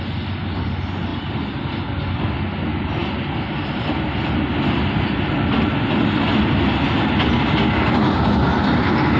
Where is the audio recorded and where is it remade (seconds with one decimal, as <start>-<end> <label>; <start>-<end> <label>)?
0.0-9.2 recorded